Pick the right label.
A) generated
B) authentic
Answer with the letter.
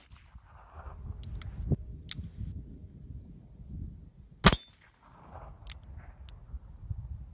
B